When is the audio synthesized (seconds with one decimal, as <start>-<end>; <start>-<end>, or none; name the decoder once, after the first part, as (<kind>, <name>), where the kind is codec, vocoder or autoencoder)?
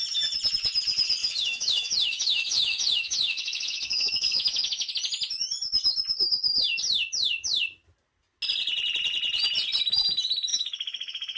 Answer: 1.2-4.9 (autoencoder, DAC-VAE); 10.5-11.4